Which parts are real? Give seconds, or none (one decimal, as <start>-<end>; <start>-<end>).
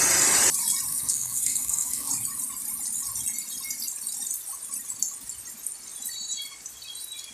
0.0-0.9; 2.1-7.3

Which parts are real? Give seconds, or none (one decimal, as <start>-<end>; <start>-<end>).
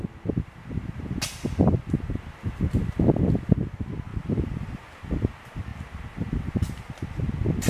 0.0-4.1; 5.0-7.7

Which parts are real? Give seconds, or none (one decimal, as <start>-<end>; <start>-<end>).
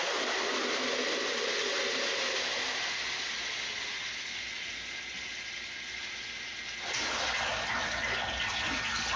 0.0-9.2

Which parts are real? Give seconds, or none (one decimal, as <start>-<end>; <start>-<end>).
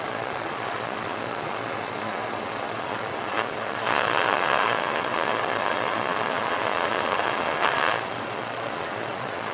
none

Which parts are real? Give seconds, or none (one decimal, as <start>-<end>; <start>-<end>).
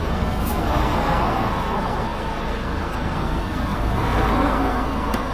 none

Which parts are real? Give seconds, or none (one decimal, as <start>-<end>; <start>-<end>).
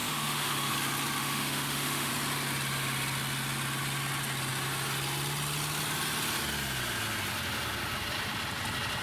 0.7-1.2; 2.1-9.0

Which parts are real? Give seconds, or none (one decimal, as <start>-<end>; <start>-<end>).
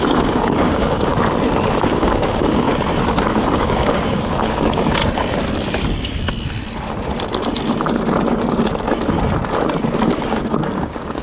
1.1-1.8; 2.7-3.3; 5.0-10.0